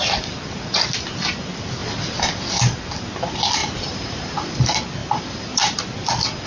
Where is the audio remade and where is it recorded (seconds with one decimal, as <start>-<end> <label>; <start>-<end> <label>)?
0.0-3.6 recorded; 3.6-4.6 remade; 4.6-5.0 recorded; 5.0-5.8 remade; 5.8-6.5 recorded

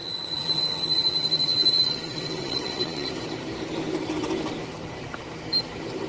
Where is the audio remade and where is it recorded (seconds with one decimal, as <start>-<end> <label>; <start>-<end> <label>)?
0.0-3.1 remade; 3.1-6.1 recorded

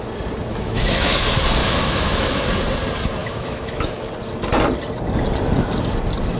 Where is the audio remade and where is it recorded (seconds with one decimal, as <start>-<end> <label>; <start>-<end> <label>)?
0.0-0.5 recorded; 0.5-1.2 remade; 1.2-1.6 recorded; 1.6-2.4 remade; 2.4-3.2 recorded; 3.2-4.1 remade; 4.1-6.4 recorded